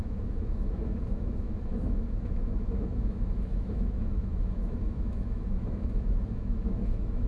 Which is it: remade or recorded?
remade